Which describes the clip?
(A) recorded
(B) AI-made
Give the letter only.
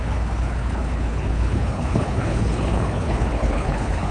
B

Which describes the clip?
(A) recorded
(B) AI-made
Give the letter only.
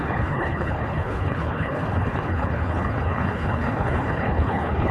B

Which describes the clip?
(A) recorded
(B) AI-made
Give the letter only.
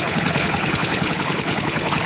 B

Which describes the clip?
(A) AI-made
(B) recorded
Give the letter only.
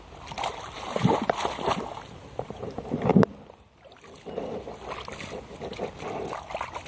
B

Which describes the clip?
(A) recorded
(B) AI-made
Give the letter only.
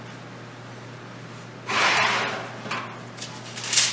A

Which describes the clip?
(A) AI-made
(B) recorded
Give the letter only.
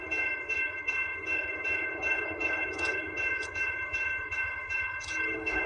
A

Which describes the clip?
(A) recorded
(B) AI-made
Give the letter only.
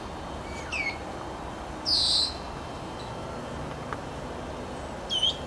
A